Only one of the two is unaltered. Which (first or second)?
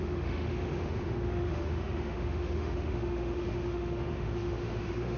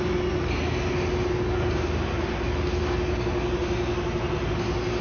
second